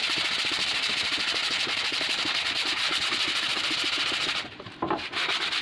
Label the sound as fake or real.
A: fake